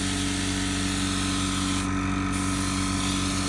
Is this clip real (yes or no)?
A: yes